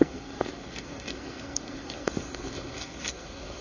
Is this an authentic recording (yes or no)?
no